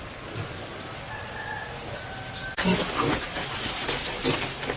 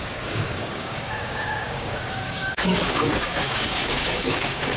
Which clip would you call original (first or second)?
first